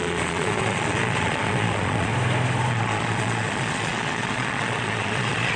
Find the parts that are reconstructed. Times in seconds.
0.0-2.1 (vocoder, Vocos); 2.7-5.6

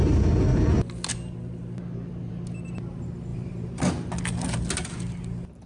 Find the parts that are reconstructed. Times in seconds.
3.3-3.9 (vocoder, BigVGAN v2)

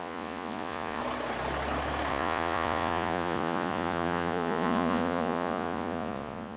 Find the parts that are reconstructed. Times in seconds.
0.0-1.0 (vocoder, Vocos); 2.1-6.6

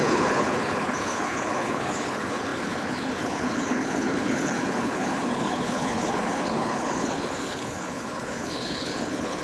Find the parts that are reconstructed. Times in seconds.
0.0-9.4 (codec, HILCodec)

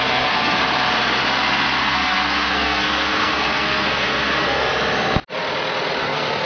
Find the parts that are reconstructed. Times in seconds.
0.0-0.6 (codec, SNAC); 1.8-4.7; 6.0-6.5

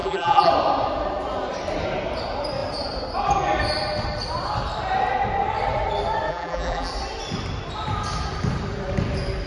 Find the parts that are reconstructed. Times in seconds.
0.0-0.5 (vocoder, BigVGAN v2); 6.3-6.9